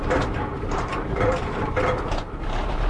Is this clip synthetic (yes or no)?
yes